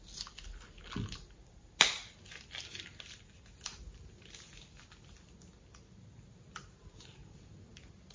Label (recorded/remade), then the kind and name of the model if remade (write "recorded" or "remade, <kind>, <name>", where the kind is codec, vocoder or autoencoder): recorded